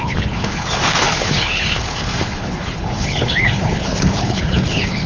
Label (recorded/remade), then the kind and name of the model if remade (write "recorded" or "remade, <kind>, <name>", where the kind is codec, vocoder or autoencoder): remade, codec, HILCodec